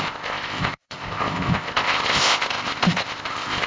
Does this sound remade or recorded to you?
remade